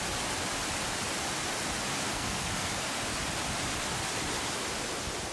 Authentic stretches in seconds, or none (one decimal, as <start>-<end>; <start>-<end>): 0.0-2.1; 2.7-5.3